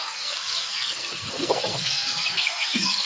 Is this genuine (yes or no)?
no